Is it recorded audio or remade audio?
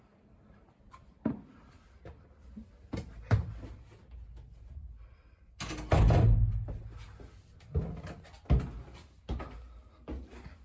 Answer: recorded